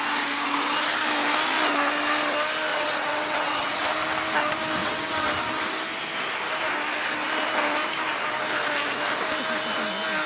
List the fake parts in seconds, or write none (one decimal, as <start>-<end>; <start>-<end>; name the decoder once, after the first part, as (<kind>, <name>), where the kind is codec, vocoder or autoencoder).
2.7-3.9 (vocoder, WaveNeXt); 4.8-5.3